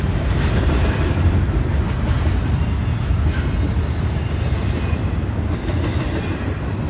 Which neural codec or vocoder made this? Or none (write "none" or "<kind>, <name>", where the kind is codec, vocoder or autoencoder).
none